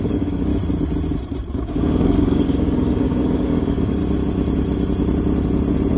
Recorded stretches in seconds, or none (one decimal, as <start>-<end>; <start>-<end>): 0.5-1.5; 4.0-6.0